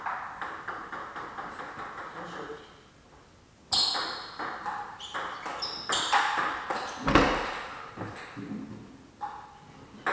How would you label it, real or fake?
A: real